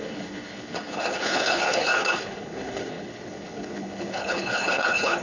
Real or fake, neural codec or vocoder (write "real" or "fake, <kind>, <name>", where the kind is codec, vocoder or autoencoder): fake, codec, HILCodec